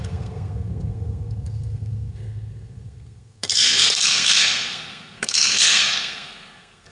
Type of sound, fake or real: fake